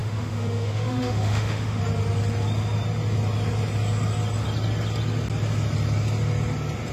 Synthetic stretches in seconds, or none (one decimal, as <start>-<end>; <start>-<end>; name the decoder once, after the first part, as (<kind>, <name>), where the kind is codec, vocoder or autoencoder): 0.0-1.8 (autoencoder, DAC-VAE)